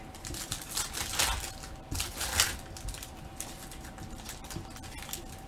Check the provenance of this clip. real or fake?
fake